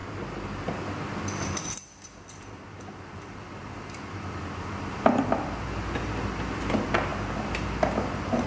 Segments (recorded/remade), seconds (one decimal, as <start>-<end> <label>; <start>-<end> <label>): 0.0-8.5 recorded